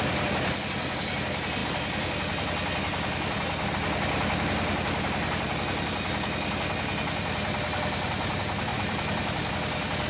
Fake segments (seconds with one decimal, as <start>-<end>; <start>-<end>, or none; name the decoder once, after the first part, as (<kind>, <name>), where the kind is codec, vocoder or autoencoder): 1.6-3.7 (vocoder, BigVGAN v2); 8.7-9.5